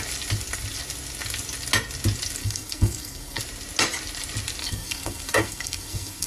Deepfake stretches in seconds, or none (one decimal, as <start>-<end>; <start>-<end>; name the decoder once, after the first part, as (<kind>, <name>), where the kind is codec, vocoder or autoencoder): 2.4-3.4 (codec, SNAC); 4.6-6.3

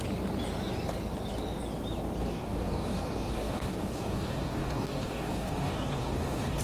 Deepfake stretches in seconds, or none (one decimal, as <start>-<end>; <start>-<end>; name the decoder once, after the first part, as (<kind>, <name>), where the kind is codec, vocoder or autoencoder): 2.2-6.6 (codec, DAC)